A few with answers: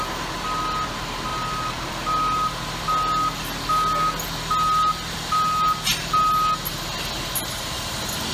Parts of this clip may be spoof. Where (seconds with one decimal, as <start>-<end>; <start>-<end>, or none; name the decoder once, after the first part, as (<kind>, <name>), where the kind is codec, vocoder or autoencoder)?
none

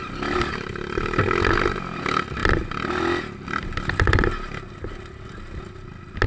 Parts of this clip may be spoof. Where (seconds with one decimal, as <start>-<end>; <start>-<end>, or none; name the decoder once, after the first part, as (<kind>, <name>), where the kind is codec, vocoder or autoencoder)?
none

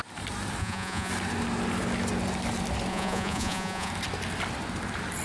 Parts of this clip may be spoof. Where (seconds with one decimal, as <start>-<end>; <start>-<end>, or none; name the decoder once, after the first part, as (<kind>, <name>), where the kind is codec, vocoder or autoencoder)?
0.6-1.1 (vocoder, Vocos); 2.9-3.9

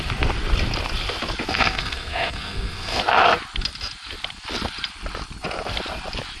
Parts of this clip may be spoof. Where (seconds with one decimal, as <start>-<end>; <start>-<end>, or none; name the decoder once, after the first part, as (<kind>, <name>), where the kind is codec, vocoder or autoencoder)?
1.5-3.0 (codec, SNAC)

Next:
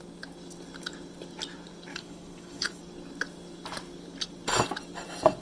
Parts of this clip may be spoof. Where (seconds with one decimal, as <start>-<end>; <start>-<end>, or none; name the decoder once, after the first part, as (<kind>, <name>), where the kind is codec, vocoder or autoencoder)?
1.9-2.8 (codec, HILCodec)